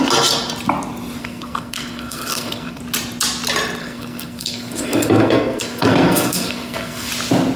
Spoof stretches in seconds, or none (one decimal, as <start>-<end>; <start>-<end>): 1.2-2.8; 3.8-7.1